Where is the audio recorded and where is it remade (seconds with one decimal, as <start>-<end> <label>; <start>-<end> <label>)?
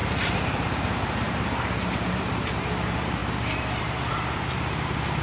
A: 0.0-3.2 remade; 3.2-3.8 recorded; 3.8-5.2 remade